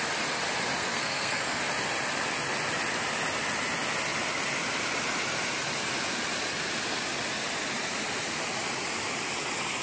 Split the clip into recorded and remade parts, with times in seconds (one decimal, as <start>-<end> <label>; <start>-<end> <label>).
0.0-0.8 recorded; 0.8-1.6 remade; 1.6-9.8 recorded